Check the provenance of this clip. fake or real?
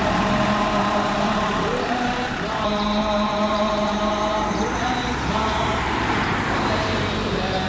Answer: fake